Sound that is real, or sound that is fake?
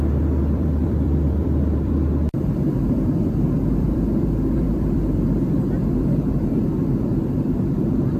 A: fake